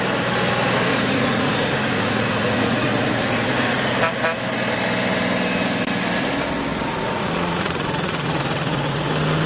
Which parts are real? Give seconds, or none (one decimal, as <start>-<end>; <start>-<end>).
0.0-0.9; 3.9-6.8; 9.1-9.5